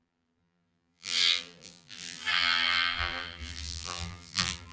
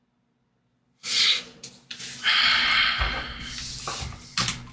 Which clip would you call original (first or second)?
second